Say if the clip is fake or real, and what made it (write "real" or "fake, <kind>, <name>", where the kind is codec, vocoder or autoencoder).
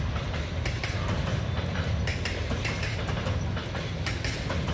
real